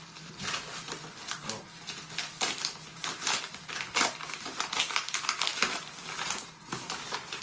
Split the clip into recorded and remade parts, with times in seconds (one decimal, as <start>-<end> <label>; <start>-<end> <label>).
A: 0.0-7.4 recorded